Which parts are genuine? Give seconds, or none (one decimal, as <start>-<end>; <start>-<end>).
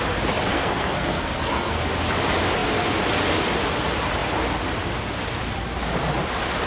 0.0-0.5; 1.8-6.7